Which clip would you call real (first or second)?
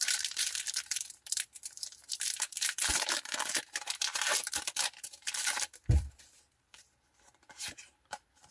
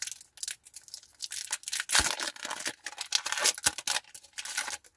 second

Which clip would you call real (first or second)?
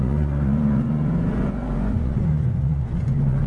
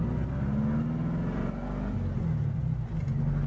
second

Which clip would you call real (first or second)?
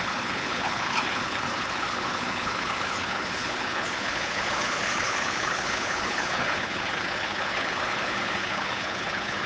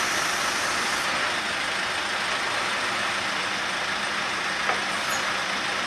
second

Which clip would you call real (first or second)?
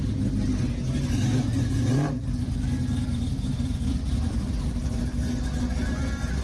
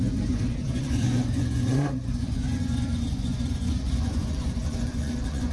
first